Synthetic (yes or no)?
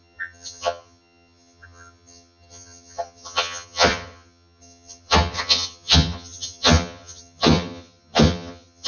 yes